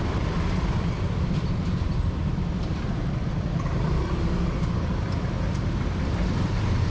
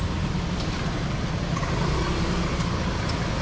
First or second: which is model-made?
first